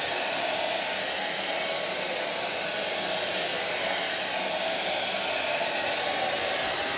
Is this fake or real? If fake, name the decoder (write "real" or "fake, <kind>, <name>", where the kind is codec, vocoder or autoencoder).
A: real